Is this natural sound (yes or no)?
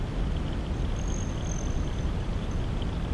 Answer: yes